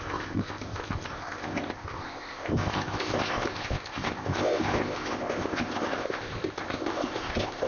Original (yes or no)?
no